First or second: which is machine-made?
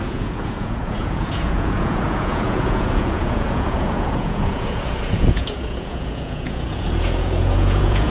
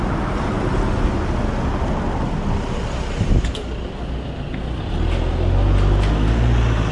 first